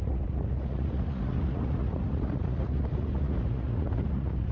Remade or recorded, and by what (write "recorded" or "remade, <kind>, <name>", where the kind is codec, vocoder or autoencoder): remade, vocoder, Vocos